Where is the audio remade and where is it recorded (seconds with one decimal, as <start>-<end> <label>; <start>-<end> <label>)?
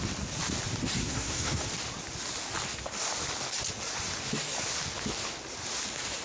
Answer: 0.0-1.0 recorded; 1.0-1.7 remade; 1.7-6.2 recorded